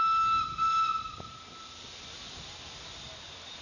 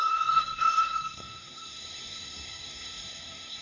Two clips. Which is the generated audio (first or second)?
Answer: second